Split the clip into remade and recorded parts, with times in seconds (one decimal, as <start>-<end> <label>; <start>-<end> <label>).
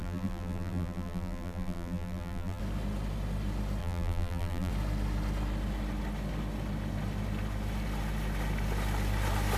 0.0-2.6 remade; 2.6-3.8 recorded; 3.8-4.7 remade; 4.7-9.6 recorded